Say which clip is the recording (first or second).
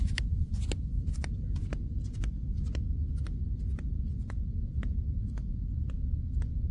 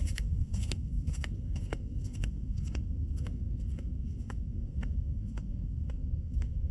first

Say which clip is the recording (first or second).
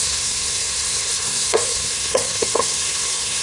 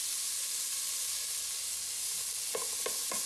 second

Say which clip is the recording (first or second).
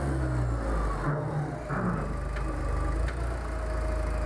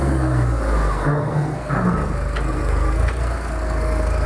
first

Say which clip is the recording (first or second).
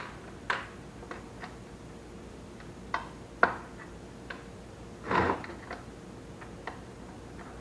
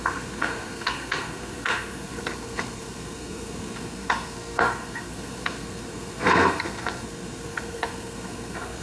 first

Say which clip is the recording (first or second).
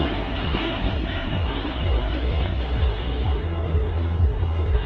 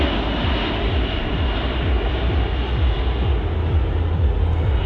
second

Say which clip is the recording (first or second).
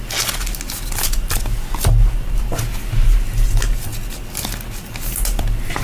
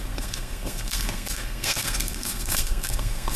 first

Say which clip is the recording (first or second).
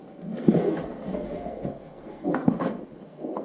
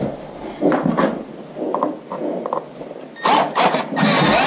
second